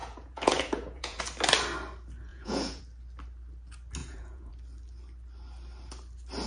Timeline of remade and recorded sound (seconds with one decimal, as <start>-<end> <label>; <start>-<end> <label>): 0.0-1.2 remade; 1.2-2.3 recorded; 2.3-2.8 remade; 2.8-4.0 recorded; 4.0-4.5 remade; 4.5-6.5 recorded